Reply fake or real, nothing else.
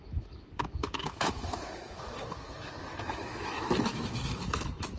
fake